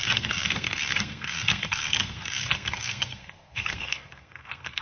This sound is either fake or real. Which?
fake